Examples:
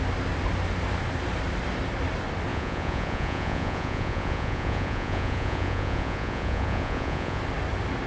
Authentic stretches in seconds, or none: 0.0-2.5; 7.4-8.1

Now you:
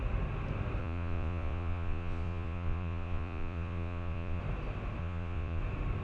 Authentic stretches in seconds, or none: 0.0-0.8; 4.4-5.0; 5.6-6.0